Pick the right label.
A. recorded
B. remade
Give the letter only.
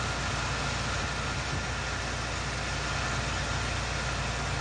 A